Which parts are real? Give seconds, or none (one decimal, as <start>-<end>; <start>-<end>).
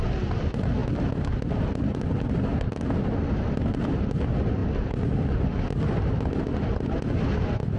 0.0-7.8